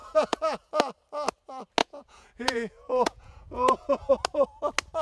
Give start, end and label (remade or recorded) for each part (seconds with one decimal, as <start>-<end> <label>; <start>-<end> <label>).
0.0-0.7 remade; 0.7-1.8 recorded; 1.8-4.1 remade; 4.1-5.0 recorded